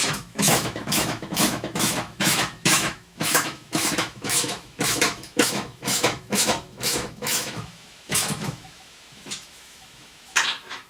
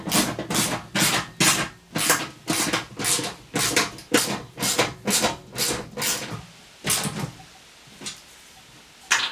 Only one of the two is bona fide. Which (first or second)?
second